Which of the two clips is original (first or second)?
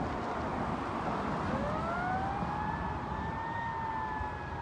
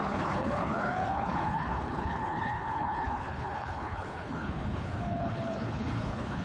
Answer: first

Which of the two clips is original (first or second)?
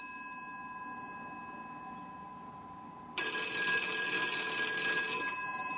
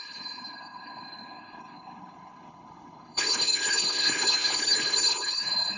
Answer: first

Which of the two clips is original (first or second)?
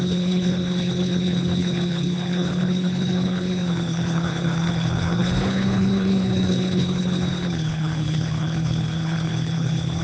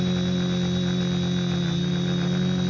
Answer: second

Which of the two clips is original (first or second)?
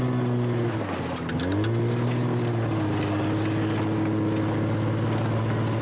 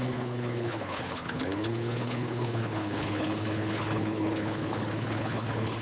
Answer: first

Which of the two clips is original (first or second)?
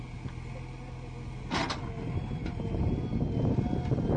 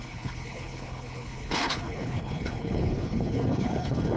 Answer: first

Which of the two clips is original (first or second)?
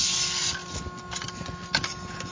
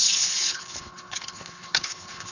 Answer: first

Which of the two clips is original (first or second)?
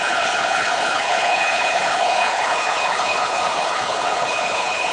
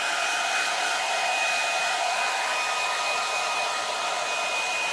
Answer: second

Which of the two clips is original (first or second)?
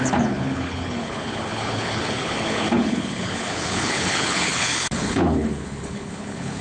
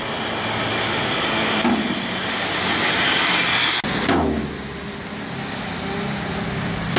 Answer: second